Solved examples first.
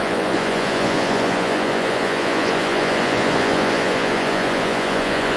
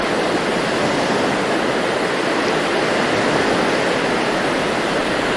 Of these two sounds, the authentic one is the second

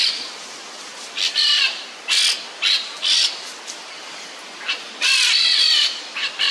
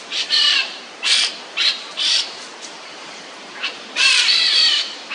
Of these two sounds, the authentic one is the first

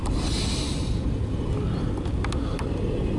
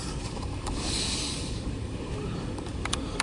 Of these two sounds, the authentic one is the first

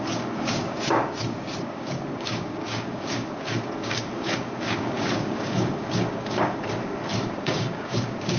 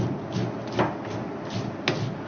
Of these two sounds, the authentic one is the second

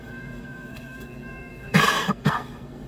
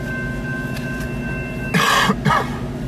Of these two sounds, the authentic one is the second